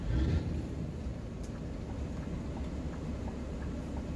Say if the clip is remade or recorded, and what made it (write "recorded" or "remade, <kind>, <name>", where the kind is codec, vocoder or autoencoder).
recorded